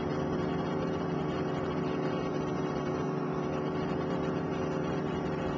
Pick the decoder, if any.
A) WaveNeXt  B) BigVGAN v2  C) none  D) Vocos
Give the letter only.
B